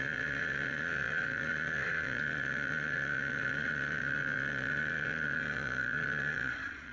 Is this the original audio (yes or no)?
no